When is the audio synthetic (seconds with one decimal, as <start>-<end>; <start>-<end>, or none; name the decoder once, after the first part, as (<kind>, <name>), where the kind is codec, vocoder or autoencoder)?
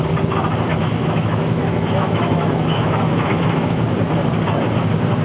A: 0.7-3.8 (autoencoder, DAC-VAE)